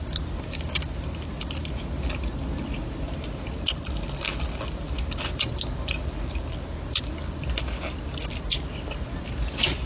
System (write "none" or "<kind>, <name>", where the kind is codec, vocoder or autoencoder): none